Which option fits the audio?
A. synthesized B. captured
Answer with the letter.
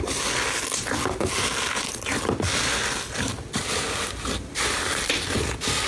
B